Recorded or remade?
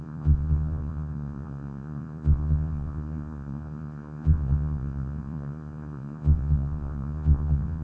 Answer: remade